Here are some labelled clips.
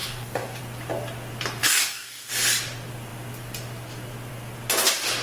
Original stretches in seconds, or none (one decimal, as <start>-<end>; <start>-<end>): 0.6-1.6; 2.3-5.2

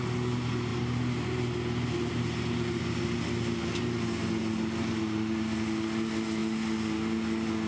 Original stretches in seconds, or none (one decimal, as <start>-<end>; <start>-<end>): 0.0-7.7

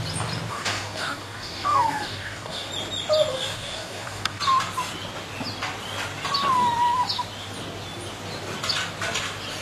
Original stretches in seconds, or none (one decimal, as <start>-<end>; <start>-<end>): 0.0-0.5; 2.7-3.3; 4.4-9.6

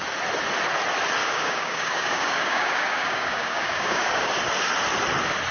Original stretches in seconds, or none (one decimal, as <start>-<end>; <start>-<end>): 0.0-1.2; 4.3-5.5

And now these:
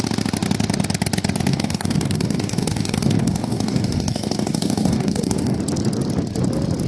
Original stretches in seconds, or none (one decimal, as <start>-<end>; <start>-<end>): 0.0-1.5; 5.6-6.9

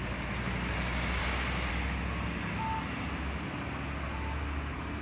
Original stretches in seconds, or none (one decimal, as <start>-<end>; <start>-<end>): 0.0-1.2; 1.7-5.0

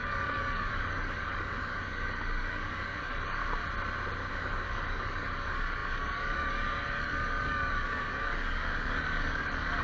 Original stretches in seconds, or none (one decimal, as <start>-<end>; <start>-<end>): 3.4-4.3

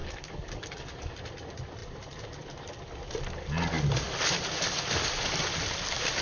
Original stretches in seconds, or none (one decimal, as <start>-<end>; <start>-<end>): 1.2-6.2